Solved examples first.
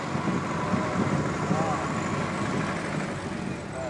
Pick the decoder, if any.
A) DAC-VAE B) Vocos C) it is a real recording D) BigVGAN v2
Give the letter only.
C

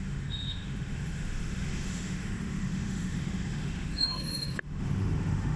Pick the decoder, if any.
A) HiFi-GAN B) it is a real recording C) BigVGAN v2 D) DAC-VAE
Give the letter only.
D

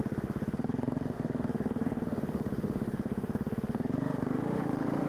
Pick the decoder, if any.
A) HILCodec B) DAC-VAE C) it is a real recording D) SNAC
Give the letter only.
B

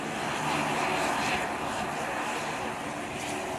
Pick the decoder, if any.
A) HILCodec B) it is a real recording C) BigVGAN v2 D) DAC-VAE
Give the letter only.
B